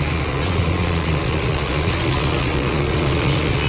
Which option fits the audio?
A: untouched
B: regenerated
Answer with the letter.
B